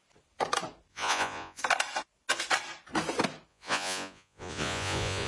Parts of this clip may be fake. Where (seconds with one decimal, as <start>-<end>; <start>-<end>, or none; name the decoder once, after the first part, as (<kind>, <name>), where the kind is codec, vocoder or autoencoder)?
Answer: 0.9-1.6 (vocoder, Vocos); 3.5-5.3